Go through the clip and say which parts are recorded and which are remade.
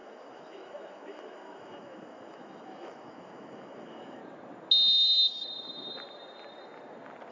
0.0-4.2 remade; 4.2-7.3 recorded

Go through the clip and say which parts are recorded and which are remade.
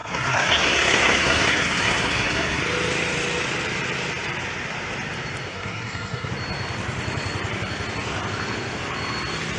0.0-2.6 remade; 2.6-5.5 recorded; 5.5-6.3 remade; 6.3-9.6 recorded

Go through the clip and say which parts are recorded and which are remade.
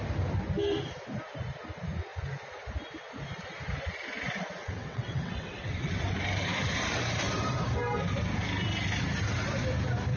0.0-4.6 recorded; 4.6-5.9 remade; 5.9-10.2 recorded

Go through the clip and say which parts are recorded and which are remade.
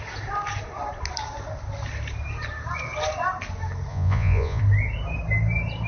0.0-3.9 recorded; 3.9-4.6 remade; 4.6-5.9 recorded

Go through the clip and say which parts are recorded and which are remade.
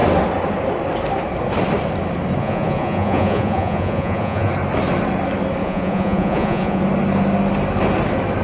0.0-2.4 recorded; 2.4-4.5 remade; 4.5-5.6 recorded; 5.6-6.8 remade; 6.8-8.4 recorded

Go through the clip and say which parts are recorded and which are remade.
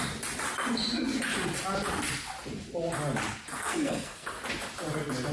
0.0-3.5 recorded; 3.5-4.3 remade; 4.3-5.3 recorded